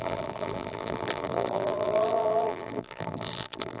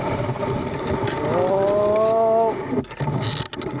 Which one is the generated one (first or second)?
first